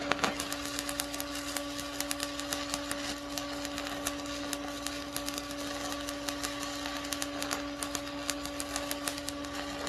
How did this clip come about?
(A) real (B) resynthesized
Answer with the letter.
A